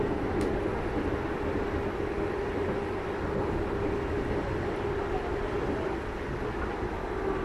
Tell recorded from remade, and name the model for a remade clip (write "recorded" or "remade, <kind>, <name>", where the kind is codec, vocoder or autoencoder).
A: recorded